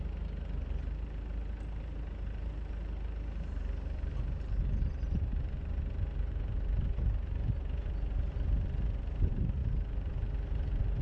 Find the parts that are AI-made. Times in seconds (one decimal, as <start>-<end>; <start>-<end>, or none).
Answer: none